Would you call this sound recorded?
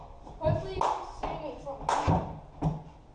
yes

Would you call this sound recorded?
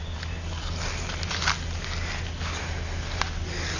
yes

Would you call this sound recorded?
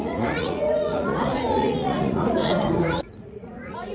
no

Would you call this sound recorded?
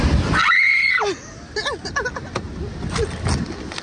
yes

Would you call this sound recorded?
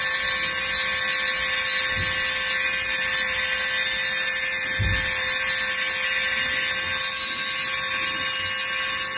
yes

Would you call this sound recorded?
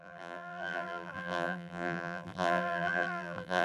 no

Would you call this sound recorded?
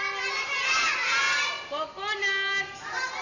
yes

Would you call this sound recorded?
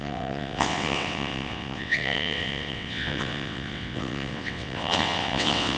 no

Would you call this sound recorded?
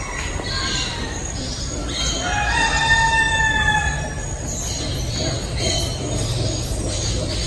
yes